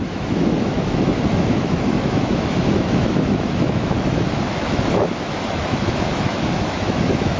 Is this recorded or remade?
remade